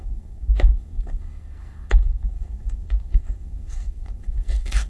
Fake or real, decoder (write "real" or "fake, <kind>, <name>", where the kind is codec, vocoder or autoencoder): fake, codec, SNAC